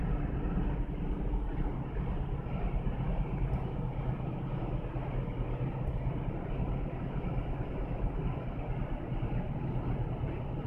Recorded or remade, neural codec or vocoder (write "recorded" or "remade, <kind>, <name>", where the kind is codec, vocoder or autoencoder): recorded